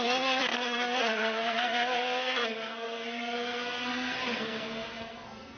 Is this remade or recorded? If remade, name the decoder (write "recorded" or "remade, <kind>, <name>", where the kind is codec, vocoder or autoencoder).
remade, codec, SNAC